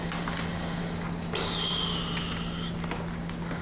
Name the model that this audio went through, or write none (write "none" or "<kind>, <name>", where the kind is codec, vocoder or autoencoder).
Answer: none